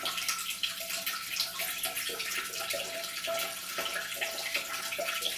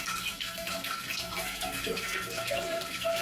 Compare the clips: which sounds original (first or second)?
first